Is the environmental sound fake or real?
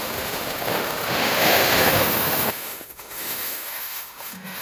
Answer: fake